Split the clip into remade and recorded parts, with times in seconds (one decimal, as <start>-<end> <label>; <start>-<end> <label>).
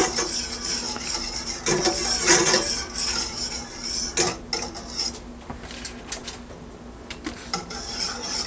0.0-8.5 recorded